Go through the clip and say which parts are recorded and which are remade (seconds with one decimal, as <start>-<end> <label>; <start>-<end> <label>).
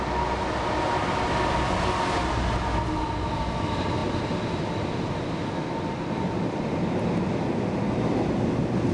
0.0-8.9 recorded